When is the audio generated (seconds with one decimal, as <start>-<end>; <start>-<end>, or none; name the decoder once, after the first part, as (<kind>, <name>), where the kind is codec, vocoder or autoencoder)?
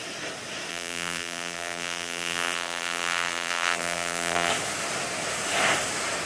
0.7-4.5 (vocoder, BigVGAN v2)